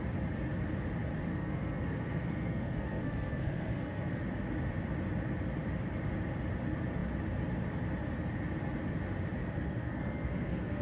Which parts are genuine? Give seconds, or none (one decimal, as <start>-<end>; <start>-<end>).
0.0-1.3; 4.2-9.4

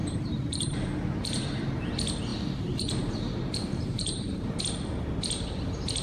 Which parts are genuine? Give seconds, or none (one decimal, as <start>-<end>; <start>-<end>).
1.9-2.3; 4.6-6.0

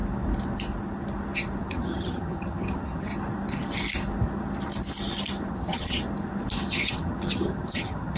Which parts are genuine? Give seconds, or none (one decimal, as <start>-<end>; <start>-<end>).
0.0-1.6; 3.1-5.5; 6.0-6.7

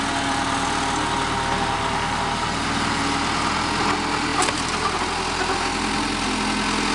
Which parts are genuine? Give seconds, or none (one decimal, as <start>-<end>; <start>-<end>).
0.0-6.9

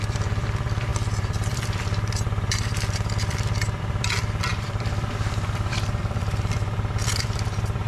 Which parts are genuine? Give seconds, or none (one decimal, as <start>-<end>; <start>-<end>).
none

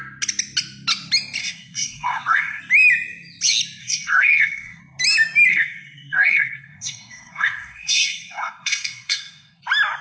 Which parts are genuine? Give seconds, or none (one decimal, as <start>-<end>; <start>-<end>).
0.0-1.4; 2.6-3.8; 4.8-5.5; 9.6-10.0

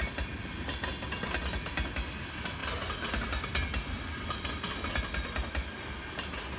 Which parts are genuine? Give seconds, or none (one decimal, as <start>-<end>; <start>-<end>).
0.0-6.6